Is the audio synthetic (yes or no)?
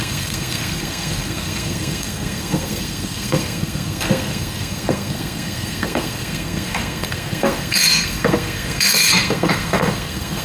yes